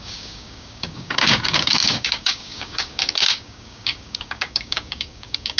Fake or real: fake